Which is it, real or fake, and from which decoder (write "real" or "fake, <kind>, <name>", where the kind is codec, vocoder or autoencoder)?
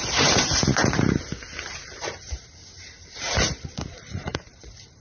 fake, vocoder, BigVGAN v2